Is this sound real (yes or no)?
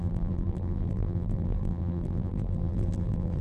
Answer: no